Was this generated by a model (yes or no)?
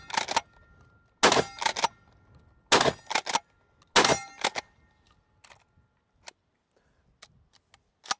no